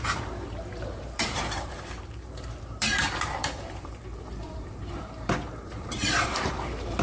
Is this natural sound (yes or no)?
no